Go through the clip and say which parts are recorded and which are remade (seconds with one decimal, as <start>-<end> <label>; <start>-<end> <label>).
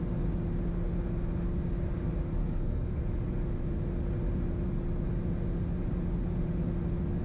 0.0-2.4 recorded; 2.4-3.0 remade; 3.0-7.2 recorded